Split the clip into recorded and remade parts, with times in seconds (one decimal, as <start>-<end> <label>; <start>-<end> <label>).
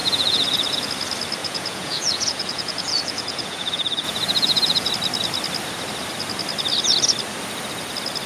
0.0-0.9 remade; 0.9-1.4 recorded; 1.4-4.9 remade; 4.9-8.3 recorded